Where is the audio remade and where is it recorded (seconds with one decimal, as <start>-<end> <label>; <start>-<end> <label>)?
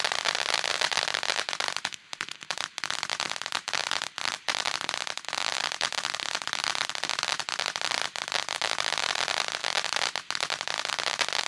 0.0-11.5 recorded